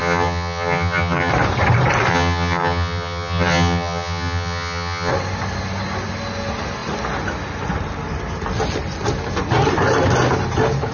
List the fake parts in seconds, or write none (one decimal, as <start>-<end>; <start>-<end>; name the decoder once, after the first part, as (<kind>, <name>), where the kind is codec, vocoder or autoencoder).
0.0-1.3 (vocoder, HiFi-GAN); 2.1-5.1